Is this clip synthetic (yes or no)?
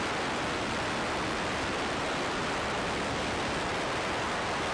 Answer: no